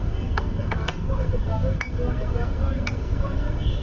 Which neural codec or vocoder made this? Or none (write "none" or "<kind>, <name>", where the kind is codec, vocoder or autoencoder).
codec, SNAC